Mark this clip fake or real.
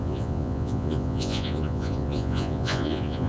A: fake